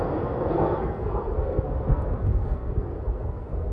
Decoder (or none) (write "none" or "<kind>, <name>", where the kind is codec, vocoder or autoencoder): codec, SNAC